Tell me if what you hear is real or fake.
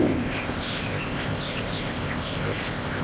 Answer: fake